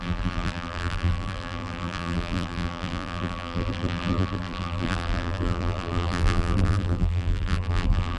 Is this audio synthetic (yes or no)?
yes